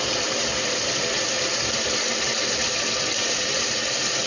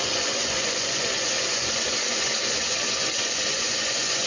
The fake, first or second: second